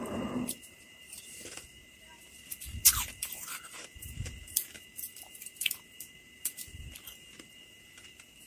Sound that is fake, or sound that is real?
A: fake